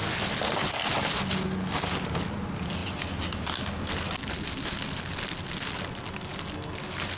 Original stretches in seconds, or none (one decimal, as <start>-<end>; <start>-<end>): 0.0-7.2